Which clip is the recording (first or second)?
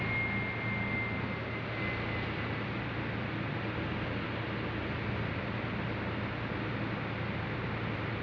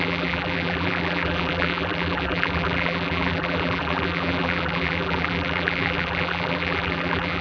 first